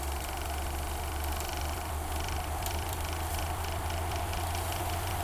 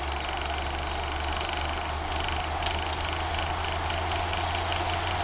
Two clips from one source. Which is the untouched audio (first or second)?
second